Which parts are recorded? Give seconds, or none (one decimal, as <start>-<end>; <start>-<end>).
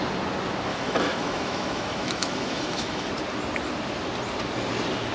0.0-0.7; 3.1-5.1